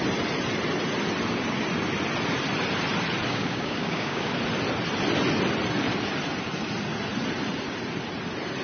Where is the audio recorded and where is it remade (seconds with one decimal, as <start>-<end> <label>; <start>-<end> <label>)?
0.0-3.3 recorded; 3.3-4.3 remade; 4.3-8.6 recorded